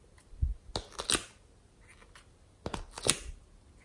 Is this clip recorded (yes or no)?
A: yes